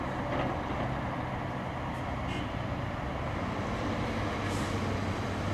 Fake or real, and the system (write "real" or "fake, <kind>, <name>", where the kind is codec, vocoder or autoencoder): real